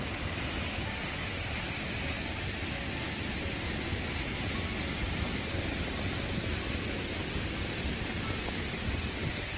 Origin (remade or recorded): recorded